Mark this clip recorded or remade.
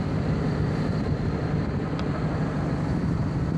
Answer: recorded